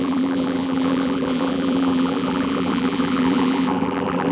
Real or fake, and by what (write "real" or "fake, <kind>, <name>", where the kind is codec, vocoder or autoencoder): fake, vocoder, BigVGAN v2